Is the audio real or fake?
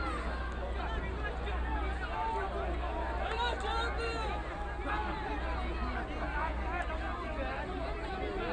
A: real